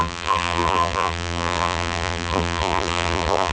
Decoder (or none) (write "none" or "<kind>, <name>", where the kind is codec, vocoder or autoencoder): vocoder, BigVGAN v2